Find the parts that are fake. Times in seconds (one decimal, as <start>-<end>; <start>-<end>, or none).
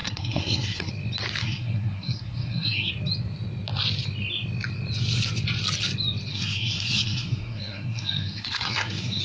0.0-0.9; 1.4-2.9; 6.3-9.2